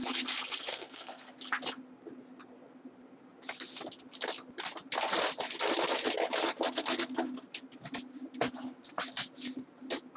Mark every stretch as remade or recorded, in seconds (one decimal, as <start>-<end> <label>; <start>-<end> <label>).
0.0-0.7 recorded; 0.7-1.3 remade; 1.3-10.2 recorded